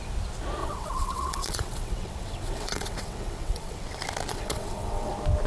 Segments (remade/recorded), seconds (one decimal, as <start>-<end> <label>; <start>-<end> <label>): 0.0-0.6 recorded; 0.6-3.9 remade; 3.9-4.3 recorded; 4.3-5.1 remade; 5.1-5.5 recorded